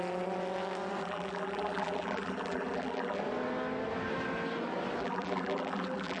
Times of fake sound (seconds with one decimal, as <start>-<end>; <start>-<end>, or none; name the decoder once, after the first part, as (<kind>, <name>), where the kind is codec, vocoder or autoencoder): 1.0-3.2 (vocoder, BigVGAN v2); 5.0-6.2